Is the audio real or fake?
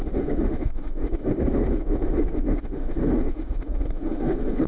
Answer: fake